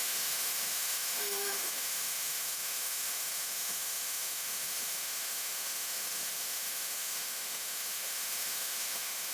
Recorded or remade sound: remade